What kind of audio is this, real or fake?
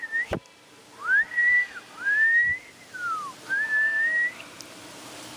real